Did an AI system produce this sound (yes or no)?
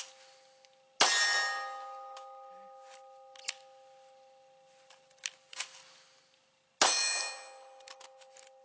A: no